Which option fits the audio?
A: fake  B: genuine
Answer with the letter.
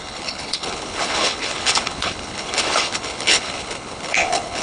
A